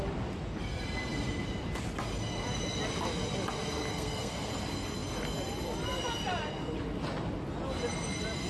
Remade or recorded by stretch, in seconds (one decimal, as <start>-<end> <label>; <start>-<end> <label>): 0.0-3.9 recorded; 3.9-4.5 remade; 4.5-8.5 recorded